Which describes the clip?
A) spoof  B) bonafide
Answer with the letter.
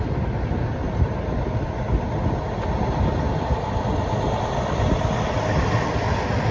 B